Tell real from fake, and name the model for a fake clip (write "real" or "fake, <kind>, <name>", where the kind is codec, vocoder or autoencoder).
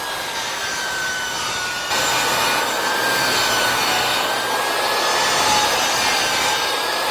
real